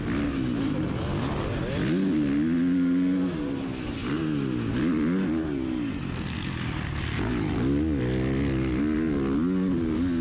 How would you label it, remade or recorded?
recorded